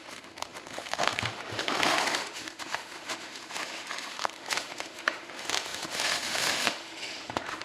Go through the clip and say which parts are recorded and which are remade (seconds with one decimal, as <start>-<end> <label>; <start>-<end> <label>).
0.0-7.6 remade